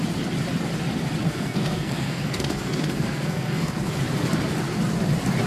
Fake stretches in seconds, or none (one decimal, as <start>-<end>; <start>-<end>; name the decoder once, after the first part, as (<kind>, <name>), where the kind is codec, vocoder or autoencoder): 1.2-3.9 (codec, SNAC)